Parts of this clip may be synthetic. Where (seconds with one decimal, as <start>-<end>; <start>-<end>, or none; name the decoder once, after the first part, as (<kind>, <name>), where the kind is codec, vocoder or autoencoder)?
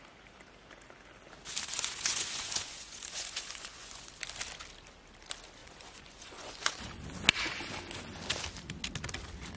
1.7-4.1 (vocoder, Vocos); 5.6-7.0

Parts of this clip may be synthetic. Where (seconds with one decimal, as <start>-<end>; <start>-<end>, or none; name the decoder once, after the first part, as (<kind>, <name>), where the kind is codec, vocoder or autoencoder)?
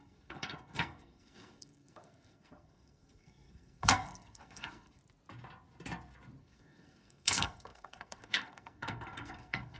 0.0-5.0 (codec, SNAC); 6.4-9.8